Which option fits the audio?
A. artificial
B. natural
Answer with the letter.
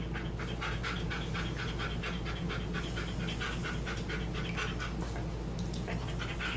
B